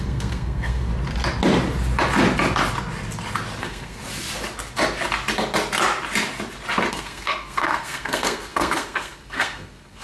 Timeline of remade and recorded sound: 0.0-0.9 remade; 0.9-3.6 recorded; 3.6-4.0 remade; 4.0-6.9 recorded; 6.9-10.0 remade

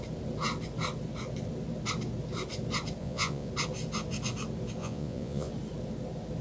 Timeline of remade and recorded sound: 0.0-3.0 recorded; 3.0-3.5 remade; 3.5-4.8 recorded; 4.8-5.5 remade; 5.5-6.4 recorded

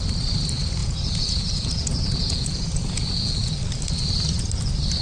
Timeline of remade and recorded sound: 0.0-0.8 recorded; 0.8-3.6 remade; 3.6-5.0 recorded

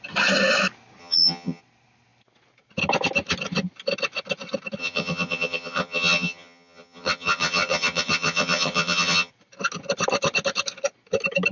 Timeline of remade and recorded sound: 0.0-1.0 recorded; 1.0-1.6 remade; 1.6-4.8 recorded; 4.8-9.3 remade; 9.3-11.5 recorded

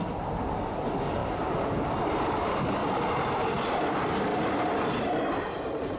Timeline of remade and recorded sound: 0.0-6.0 recorded

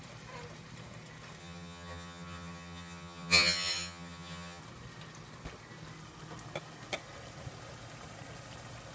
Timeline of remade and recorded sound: 0.0-1.4 recorded; 1.4-4.6 remade; 4.6-8.9 recorded

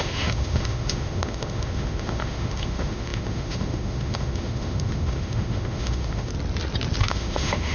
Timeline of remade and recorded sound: 0.0-6.3 remade; 6.3-7.0 recorded; 7.0-7.7 remade

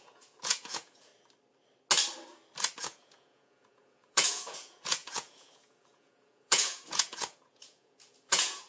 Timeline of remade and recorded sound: 0.0-1.1 remade; 1.1-2.8 recorded; 2.8-8.7 remade